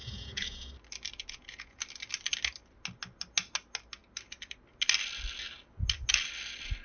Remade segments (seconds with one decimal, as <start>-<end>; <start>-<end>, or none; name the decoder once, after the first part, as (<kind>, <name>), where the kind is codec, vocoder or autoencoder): 0.0-0.7 (vocoder, Vocos); 1.2-1.8